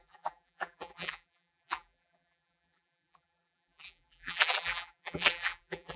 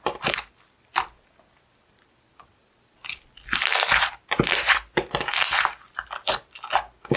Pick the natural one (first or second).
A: second